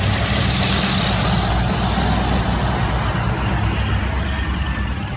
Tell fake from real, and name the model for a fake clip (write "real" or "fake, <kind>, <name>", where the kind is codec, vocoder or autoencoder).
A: real